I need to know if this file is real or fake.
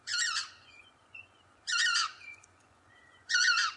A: fake